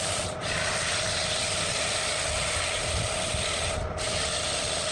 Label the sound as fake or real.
real